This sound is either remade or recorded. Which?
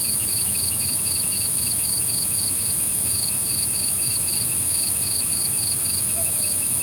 remade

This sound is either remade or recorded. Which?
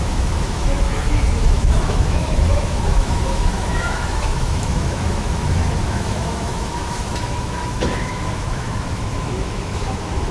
remade